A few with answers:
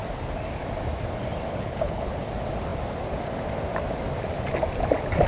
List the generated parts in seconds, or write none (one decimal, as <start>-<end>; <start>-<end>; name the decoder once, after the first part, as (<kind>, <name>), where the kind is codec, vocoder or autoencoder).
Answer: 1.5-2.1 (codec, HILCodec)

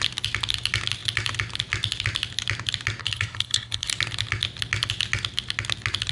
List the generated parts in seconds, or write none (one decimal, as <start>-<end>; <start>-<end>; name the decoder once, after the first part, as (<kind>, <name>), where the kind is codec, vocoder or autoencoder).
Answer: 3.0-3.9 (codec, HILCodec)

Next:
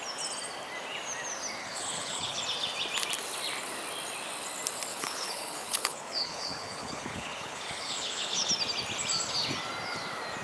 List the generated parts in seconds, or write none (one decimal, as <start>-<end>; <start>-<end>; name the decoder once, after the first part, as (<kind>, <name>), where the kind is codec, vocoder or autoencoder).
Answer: 1.6-2.4 (codec, HILCodec); 4.9-8.5

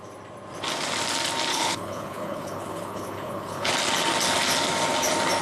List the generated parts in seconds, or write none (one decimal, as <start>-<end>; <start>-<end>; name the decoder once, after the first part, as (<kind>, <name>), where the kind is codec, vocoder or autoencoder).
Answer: 1.5-3.7 (codec, HILCodec)

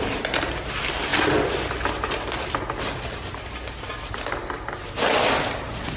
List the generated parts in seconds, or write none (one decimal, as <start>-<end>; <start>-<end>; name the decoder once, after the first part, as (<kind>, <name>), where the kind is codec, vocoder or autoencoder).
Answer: none